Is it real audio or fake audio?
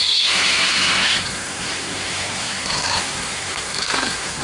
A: fake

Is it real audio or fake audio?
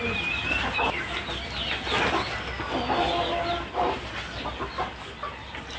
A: real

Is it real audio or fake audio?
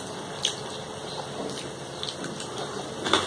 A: real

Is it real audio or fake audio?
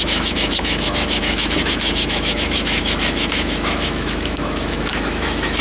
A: fake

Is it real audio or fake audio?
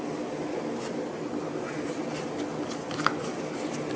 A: real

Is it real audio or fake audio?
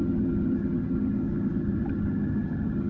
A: fake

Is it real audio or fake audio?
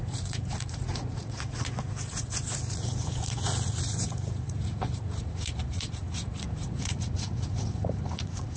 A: fake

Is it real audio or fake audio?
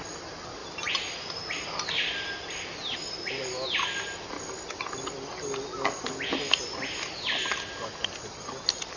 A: real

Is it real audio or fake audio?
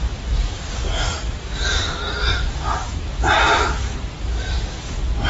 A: real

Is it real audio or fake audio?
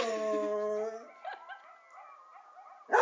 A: real